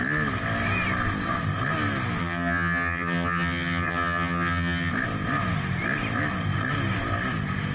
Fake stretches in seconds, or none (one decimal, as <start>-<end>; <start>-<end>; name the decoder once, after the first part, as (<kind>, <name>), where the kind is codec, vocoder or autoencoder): 2.2-4.9 (vocoder, HiFi-GAN)